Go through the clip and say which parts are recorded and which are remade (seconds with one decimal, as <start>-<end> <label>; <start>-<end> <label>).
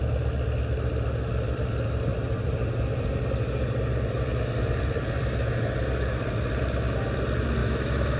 0.0-7.6 recorded; 7.6-8.2 remade